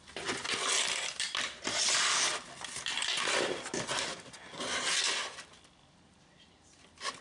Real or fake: fake